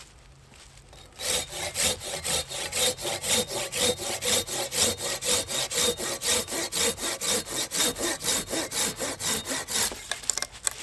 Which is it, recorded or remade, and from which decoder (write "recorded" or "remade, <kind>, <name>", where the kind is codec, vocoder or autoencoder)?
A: recorded